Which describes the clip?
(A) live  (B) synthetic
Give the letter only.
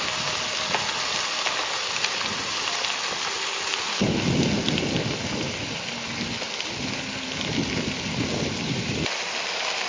A